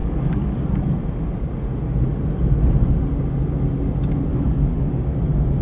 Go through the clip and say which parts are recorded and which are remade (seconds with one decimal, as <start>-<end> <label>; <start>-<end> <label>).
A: 0.0-0.8 remade; 0.8-4.3 recorded; 4.3-4.9 remade; 4.9-5.6 recorded